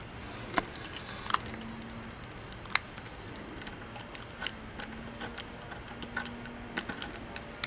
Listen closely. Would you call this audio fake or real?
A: real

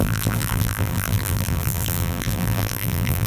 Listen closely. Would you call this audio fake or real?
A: fake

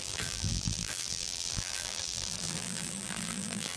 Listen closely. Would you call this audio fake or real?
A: fake